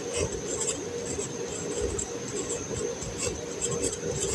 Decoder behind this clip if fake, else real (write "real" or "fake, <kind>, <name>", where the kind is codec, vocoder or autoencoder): real